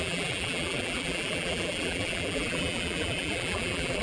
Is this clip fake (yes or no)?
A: yes